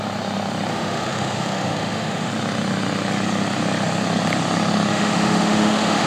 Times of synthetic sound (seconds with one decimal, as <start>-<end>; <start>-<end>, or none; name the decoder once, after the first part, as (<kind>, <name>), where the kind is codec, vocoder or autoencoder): 0.7-2.3 (autoencoder, DAC-VAE); 4.9-6.1